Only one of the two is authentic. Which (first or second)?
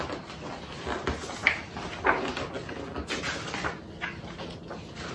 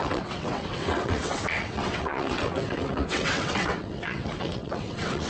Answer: first